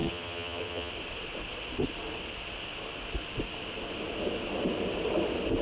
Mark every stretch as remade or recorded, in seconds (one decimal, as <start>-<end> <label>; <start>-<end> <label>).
0.0-0.9 remade; 0.9-5.6 recorded